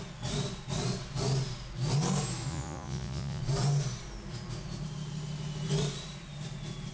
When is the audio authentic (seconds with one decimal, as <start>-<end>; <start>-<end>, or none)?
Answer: 0.0-2.5; 3.4-6.9